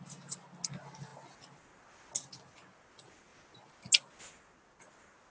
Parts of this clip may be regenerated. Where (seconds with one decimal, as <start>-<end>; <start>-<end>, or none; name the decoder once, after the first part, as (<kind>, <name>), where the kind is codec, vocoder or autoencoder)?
none